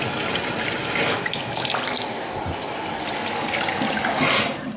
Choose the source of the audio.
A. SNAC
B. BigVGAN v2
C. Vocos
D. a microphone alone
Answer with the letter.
D